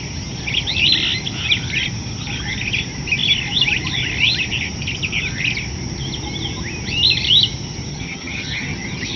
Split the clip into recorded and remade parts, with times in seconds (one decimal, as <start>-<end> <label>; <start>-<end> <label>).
0.0-7.9 recorded; 7.9-9.2 remade